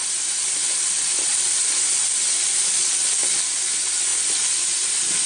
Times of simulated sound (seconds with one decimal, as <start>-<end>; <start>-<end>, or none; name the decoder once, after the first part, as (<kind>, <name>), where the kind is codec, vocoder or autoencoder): none